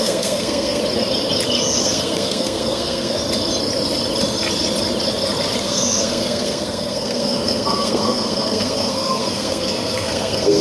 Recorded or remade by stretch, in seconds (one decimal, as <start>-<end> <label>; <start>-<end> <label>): 0.0-0.8 remade; 0.8-1.8 recorded; 1.8-3.2 remade; 3.2-5.6 recorded; 5.6-10.6 remade